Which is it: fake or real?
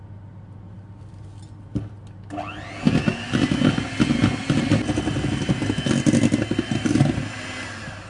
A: real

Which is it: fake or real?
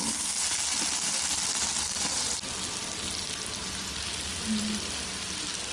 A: real